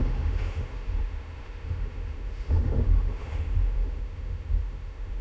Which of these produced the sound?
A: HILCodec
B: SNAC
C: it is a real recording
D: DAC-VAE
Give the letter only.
D